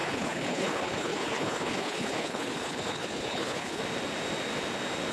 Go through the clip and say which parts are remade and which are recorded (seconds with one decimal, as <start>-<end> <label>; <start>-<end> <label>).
0.0-3.8 remade; 3.8-5.1 recorded